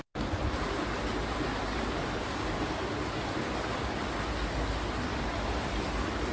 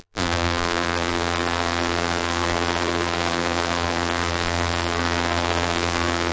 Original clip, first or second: first